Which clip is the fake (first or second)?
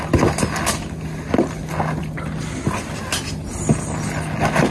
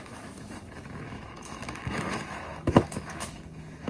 second